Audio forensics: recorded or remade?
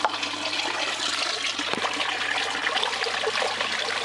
recorded